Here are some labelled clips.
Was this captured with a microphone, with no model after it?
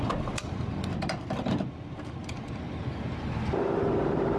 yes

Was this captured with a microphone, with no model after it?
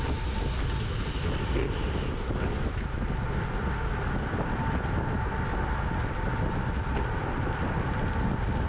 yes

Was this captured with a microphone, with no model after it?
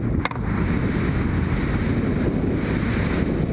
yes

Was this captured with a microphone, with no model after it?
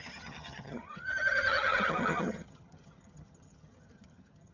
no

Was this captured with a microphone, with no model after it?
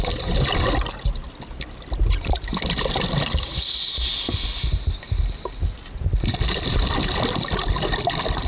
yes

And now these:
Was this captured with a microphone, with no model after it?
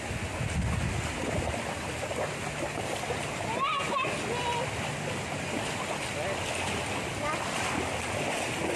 yes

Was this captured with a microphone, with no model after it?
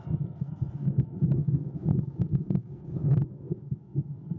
no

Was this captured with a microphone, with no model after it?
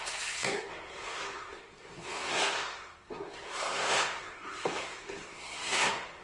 no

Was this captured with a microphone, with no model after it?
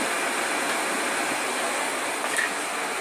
yes